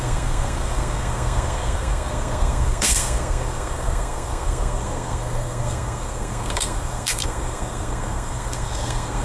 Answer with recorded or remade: remade